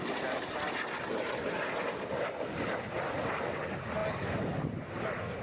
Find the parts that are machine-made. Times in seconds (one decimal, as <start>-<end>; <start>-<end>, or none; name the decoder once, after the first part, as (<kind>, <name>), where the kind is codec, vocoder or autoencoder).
none